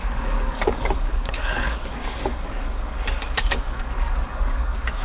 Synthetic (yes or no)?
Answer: yes